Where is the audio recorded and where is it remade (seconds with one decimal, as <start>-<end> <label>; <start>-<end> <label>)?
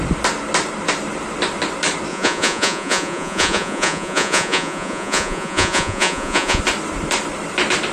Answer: 0.0-2.1 recorded; 2.1-6.6 remade; 6.6-7.9 recorded